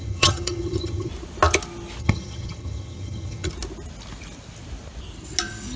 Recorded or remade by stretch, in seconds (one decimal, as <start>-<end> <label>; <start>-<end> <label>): 0.0-1.1 remade; 1.1-2.0 recorded; 2.0-3.5 remade; 3.5-5.8 recorded